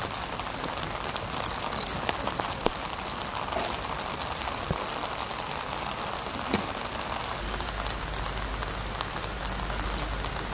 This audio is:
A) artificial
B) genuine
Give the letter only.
B